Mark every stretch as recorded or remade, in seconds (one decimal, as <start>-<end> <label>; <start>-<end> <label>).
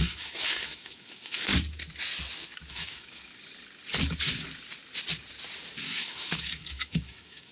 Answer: 0.0-1.5 remade; 1.5-2.7 recorded; 2.7-3.3 remade; 3.3-5.8 recorded; 5.8-7.5 remade